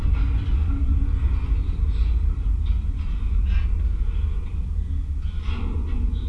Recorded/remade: recorded